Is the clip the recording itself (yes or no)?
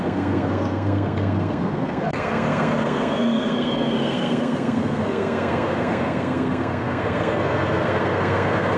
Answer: no